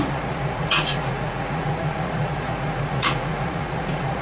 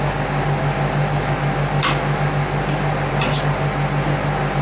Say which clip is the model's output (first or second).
first